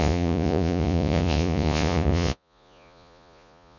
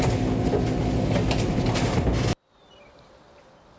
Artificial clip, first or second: first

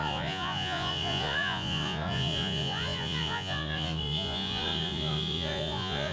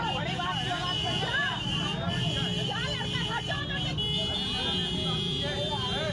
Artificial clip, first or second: first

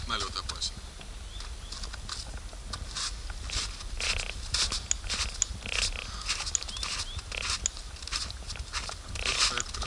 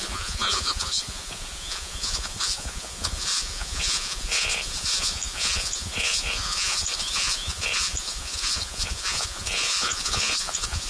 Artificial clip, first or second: second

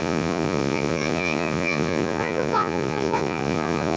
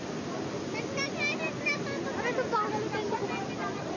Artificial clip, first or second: first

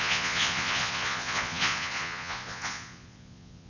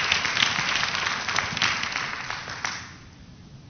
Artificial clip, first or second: first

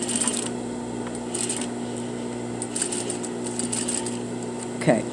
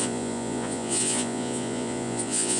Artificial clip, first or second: second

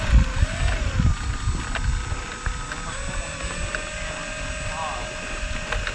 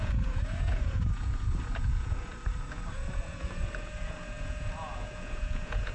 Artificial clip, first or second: second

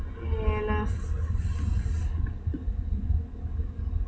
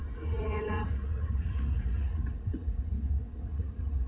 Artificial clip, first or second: second